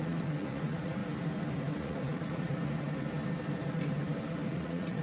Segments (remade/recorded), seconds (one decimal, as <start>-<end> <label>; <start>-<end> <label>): 0.0-1.0 remade; 1.0-1.8 recorded; 1.8-2.5 remade; 2.5-4.5 recorded; 4.5-5.0 remade